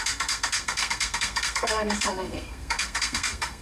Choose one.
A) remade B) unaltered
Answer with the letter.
A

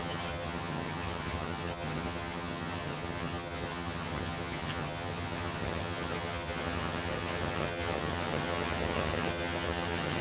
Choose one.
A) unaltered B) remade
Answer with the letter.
B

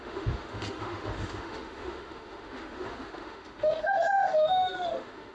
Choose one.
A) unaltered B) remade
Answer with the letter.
B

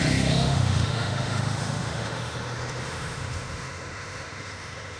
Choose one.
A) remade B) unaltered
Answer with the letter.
A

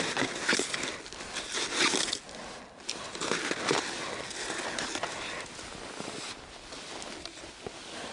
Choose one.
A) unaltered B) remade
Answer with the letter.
A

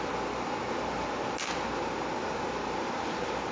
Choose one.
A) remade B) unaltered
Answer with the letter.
B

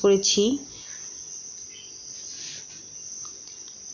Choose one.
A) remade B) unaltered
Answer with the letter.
B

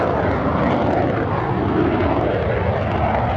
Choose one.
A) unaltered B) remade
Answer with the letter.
A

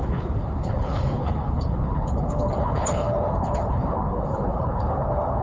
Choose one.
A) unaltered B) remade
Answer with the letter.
B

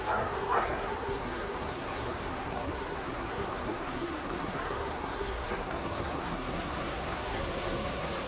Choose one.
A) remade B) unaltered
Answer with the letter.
A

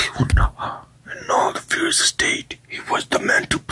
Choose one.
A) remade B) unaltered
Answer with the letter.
B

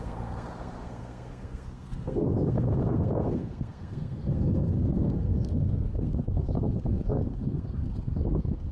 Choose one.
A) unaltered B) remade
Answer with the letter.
B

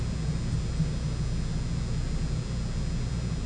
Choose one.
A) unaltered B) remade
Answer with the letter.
A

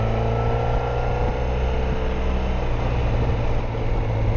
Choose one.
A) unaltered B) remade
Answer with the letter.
A